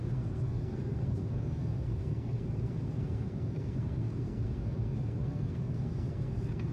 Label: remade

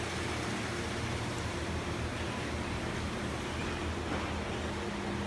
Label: recorded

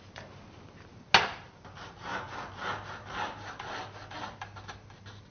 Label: recorded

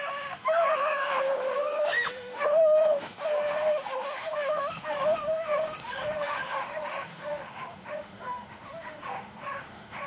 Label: remade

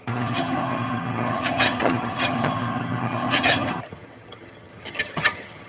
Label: remade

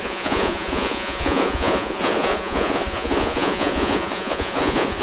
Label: remade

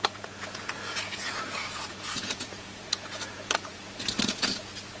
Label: remade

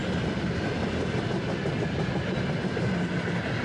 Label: recorded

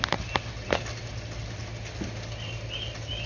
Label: recorded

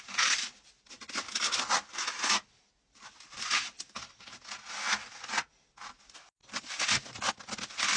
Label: recorded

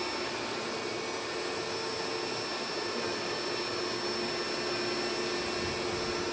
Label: recorded